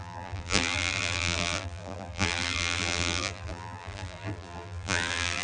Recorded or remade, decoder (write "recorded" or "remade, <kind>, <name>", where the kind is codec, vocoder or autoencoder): remade, vocoder, BigVGAN v2